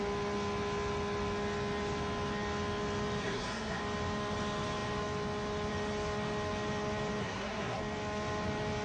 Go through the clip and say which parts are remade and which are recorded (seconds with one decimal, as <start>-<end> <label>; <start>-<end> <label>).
0.0-3.2 recorded; 3.2-3.8 remade; 3.8-7.2 recorded; 7.2-7.8 remade; 7.8-8.8 recorded